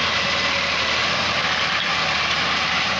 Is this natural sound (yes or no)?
yes